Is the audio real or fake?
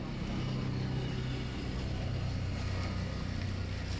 real